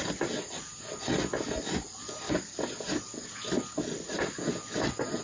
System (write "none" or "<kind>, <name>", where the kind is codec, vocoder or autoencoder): none